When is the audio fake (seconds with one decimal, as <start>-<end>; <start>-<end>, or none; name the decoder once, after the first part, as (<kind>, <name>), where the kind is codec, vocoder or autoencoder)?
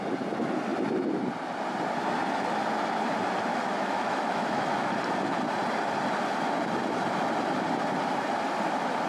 3.5-4.9 (autoencoder, DAC-VAE)